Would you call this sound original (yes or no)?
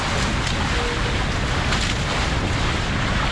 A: yes